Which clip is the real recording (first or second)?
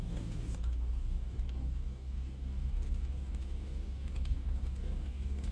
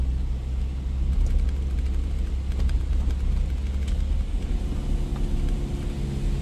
second